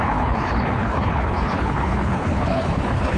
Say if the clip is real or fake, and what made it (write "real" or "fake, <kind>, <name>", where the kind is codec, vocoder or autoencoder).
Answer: fake, codec, HILCodec